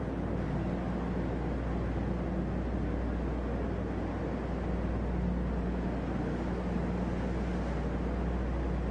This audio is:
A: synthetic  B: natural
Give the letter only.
B